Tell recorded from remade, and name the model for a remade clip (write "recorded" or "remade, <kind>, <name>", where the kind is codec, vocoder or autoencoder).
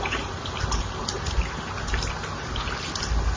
recorded